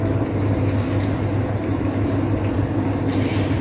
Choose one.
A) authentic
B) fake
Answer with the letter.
A